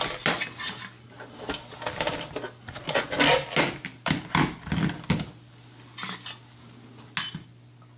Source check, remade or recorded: recorded